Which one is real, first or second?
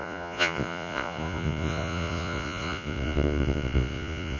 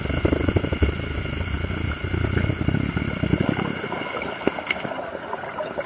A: second